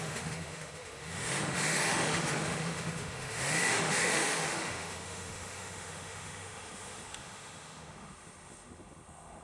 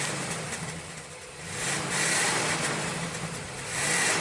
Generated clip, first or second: first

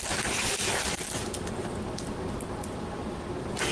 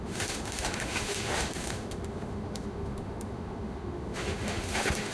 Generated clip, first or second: second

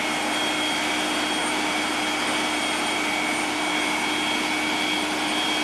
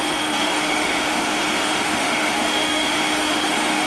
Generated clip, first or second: second